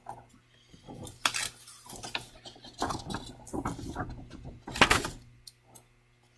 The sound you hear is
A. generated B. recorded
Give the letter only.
B